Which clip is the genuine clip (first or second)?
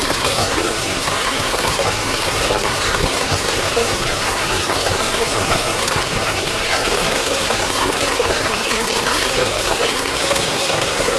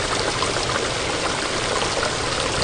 second